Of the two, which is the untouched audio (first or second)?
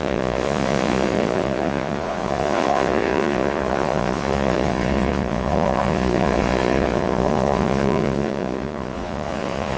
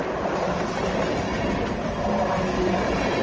second